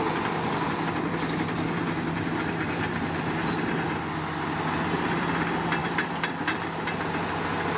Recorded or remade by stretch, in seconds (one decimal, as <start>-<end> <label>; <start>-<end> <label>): 0.0-7.8 recorded

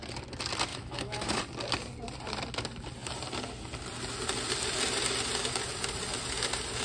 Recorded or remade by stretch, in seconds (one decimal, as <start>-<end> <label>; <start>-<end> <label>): 0.0-0.7 recorded; 0.7-1.4 remade; 1.4-6.8 recorded

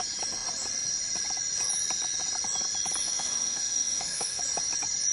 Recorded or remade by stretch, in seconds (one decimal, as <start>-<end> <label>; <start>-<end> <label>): 0.0-3.0 recorded; 3.0-4.4 remade; 4.4-5.1 recorded

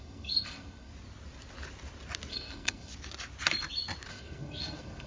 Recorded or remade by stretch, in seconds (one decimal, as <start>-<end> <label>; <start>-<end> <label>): 0.0-0.9 remade; 0.9-2.3 recorded; 2.3-2.9 remade; 2.9-4.1 recorded; 4.1-5.1 remade

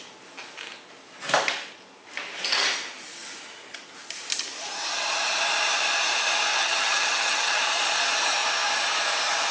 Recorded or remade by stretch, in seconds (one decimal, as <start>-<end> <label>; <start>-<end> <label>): 0.0-6.5 recorded; 6.5-7.6 remade; 7.6-9.5 recorded

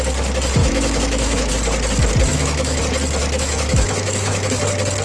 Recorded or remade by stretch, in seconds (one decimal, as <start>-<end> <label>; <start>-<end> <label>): 0.0-0.6 recorded; 0.6-1.5 remade; 1.5-2.3 recorded; 2.3-2.8 remade; 2.8-3.2 recorded; 3.2-4.6 remade; 4.6-5.0 recorded

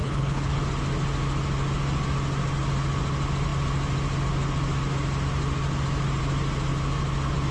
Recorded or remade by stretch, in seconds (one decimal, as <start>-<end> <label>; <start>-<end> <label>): 0.0-0.6 remade; 0.6-7.5 recorded